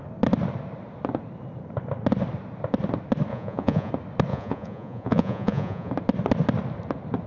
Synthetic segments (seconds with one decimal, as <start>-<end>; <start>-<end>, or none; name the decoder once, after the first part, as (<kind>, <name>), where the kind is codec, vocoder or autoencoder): 3.3-3.9 (vocoder, Vocos); 4.3-5.9